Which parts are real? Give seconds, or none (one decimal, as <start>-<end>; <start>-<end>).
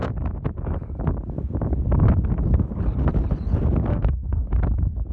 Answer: 0.0-3.9; 4.6-5.1